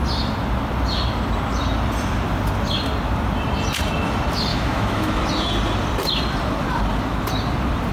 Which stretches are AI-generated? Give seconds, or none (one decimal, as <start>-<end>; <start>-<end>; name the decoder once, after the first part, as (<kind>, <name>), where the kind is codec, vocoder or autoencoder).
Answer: 4.5-5.2 (autoencoder, DAC-VAE)